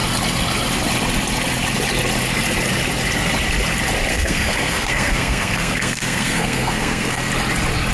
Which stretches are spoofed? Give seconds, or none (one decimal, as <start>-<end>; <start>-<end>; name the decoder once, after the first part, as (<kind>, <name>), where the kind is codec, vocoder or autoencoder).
4.1-7.3 (codec, SNAC)